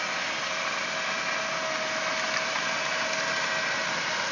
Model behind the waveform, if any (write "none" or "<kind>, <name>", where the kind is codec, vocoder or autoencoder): none